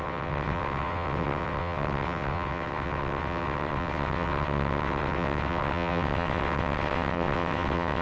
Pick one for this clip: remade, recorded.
remade